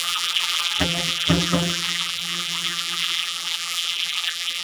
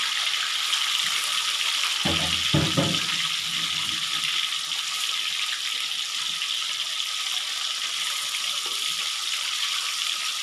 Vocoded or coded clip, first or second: first